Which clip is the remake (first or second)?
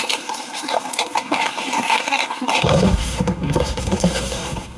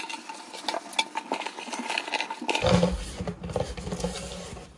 first